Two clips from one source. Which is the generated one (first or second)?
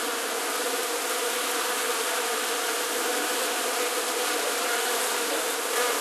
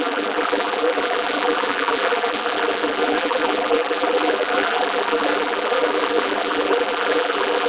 second